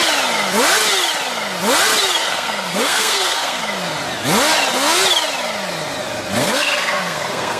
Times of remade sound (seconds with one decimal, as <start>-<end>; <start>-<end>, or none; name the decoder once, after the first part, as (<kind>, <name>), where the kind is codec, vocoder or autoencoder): 2.2-3.6 (codec, SNAC); 6.4-7.6